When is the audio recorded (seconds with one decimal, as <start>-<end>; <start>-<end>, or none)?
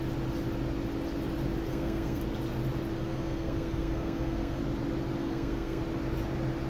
0.0-1.7; 2.2-3.0; 4.6-5.2; 5.8-6.7